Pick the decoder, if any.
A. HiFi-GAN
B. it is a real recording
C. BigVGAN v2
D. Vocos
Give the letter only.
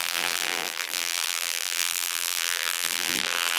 C